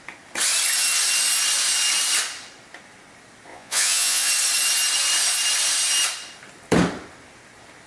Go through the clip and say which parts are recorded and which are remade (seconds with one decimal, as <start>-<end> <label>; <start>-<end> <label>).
0.0-3.5 recorded; 3.5-4.3 remade; 4.3-7.9 recorded